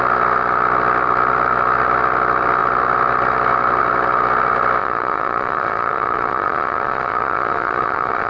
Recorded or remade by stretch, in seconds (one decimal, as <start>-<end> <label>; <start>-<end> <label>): 0.0-4.8 recorded; 4.8-8.3 remade